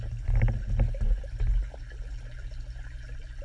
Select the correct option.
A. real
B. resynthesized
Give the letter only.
A